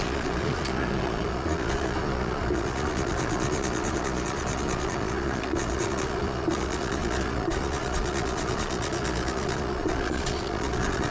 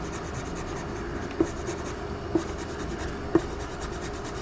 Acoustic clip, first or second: second